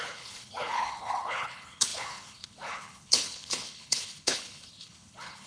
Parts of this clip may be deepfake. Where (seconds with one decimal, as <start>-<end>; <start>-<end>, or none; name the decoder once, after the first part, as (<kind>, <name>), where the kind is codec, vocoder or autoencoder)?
0.0-5.5 (codec, HILCodec)